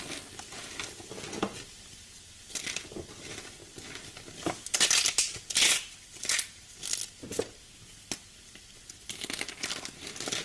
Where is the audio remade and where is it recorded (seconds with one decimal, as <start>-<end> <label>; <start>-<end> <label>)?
0.0-10.4 recorded